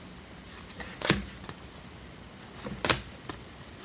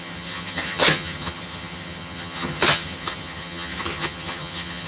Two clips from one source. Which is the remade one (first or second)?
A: second